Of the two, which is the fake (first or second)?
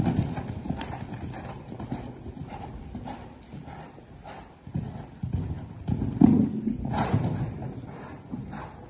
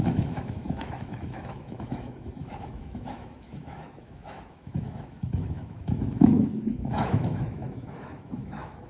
second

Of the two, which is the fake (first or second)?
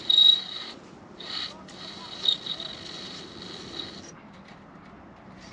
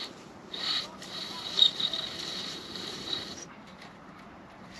second